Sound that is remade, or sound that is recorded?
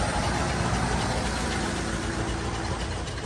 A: recorded